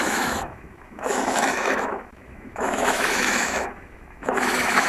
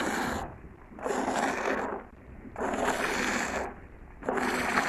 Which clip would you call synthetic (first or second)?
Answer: first